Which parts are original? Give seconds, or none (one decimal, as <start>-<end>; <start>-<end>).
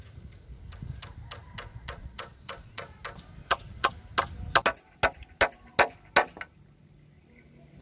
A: 0.0-1.7; 3.0-3.4; 3.9-7.8